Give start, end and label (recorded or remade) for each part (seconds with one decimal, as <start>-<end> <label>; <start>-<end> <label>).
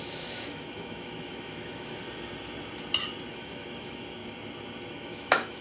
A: 0.0-2.0 remade; 2.0-3.3 recorded; 3.3-4.2 remade; 4.2-4.9 recorded; 4.9-5.6 remade